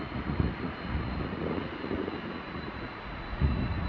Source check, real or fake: fake